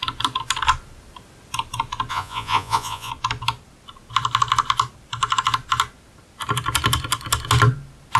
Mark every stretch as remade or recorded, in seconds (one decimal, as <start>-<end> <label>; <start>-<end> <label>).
0.0-2.1 recorded; 2.1-3.1 remade; 3.1-8.2 recorded